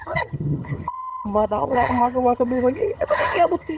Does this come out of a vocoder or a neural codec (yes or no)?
yes